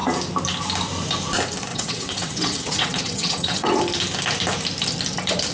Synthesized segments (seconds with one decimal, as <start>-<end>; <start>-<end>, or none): 1.7-3.8